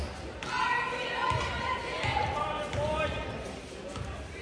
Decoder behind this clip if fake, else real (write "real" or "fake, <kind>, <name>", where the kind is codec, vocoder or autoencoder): real